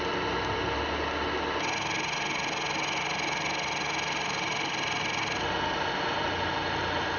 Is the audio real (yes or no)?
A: yes